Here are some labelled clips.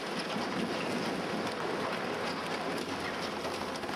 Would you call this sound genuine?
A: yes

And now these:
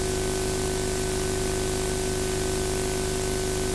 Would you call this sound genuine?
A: yes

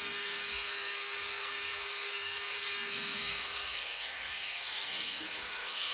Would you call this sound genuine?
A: no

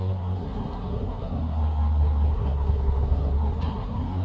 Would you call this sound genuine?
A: no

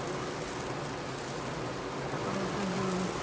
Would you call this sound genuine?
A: yes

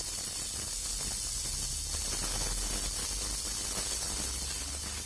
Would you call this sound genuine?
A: yes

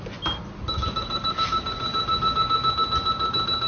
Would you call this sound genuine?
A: yes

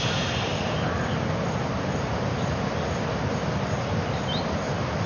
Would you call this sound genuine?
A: yes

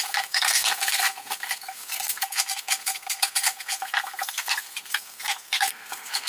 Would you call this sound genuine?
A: no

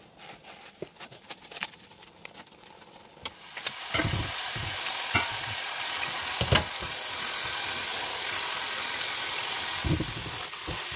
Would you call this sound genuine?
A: yes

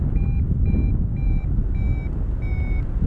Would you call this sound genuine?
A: yes